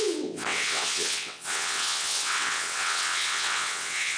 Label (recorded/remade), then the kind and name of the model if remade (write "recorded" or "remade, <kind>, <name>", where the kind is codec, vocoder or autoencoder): remade, vocoder, WaveNeXt